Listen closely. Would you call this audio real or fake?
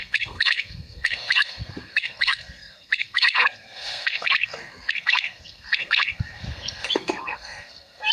fake